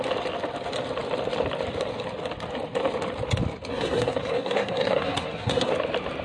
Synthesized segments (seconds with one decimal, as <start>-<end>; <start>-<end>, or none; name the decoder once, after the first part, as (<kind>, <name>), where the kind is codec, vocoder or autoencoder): 3.7-5.7 (codec, SNAC)